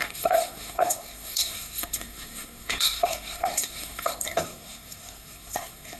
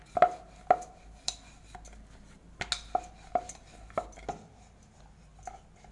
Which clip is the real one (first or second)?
second